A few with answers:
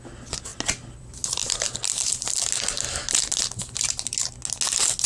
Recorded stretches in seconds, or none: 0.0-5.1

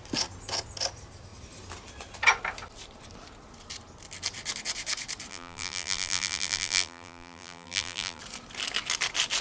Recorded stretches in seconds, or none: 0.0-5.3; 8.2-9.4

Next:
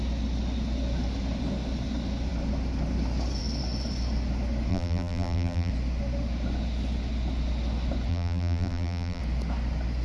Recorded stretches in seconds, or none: 0.0-4.7; 5.7-8.1; 9.2-10.0

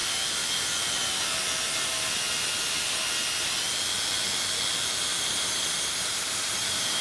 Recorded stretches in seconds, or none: 0.0-5.1

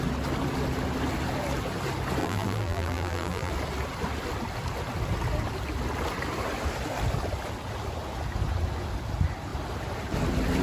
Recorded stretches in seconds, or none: 0.0-2.2; 3.5-10.6